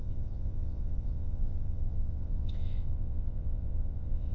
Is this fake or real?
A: fake